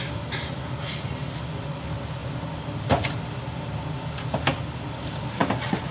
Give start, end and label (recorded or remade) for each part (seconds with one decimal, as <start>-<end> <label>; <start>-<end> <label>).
0.0-5.9 recorded